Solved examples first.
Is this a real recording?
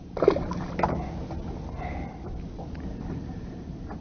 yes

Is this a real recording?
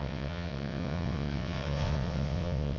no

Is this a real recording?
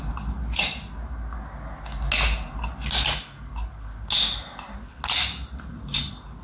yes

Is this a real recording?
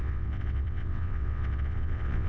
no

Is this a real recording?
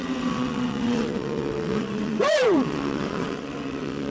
no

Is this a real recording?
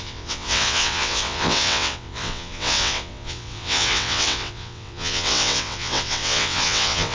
no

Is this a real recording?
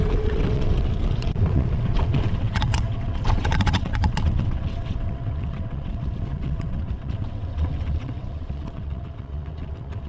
no